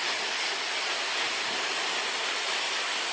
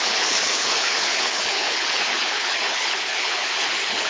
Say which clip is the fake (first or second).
second